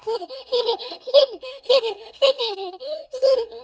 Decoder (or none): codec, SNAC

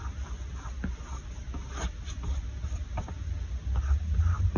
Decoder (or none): none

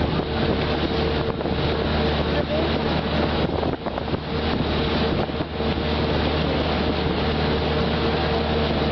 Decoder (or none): none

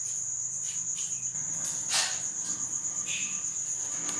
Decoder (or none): none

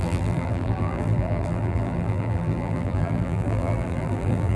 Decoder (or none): vocoder, BigVGAN v2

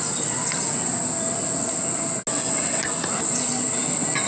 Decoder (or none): none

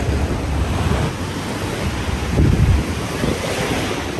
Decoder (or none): none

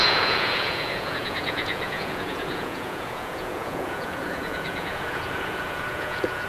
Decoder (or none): vocoder, Vocos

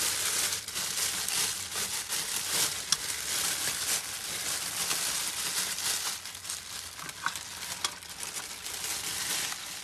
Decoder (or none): none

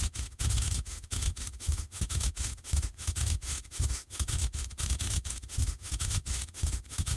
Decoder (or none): autoencoder, DAC-VAE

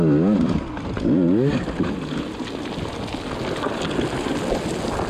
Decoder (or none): none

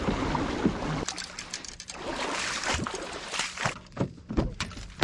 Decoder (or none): none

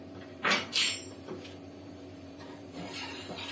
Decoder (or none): vocoder, BigVGAN v2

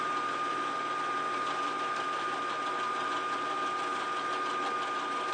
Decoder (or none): none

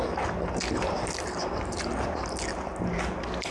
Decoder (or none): none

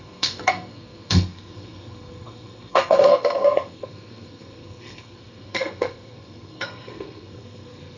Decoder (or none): codec, SNAC